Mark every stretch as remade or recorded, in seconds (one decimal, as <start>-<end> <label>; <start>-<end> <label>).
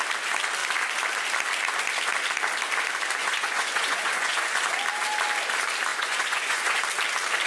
0.0-3.2 recorded; 3.2-4.6 remade; 4.6-5.9 recorded; 5.9-6.8 remade; 6.8-7.5 recorded